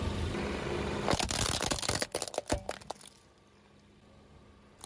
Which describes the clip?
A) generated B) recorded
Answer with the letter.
B